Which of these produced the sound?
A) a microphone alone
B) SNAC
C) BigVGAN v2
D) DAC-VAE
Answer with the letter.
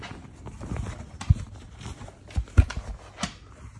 A